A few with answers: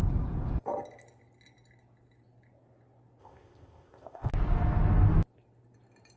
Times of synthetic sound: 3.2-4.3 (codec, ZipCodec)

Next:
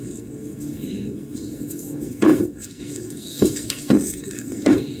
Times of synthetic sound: 0.0-5.0 (codec, SNAC)

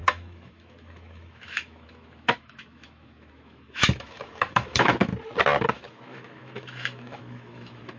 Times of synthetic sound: 0.0-5.1 (autoencoder, DAC-VAE); 5.7-8.0

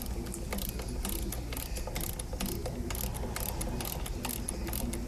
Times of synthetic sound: none

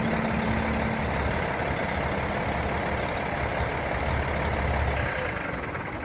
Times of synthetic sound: none

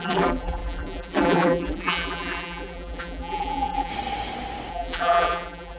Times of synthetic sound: 0.0-3.9 (vocoder, BigVGAN v2); 4.7-5.8

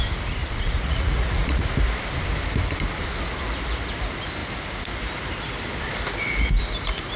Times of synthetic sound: 0.4-1.6 (vocoder, Vocos)

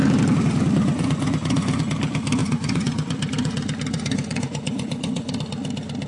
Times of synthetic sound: 0.8-1.8 (vocoder, Vocos); 2.4-3.3; 3.9-5.4